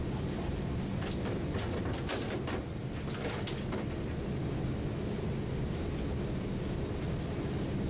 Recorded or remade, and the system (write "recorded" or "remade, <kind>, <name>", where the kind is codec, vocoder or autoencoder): recorded